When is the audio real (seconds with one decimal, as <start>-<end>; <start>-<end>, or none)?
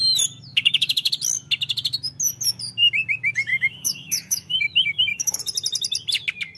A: 0.0-0.5; 1.1-3.5; 5.4-6.6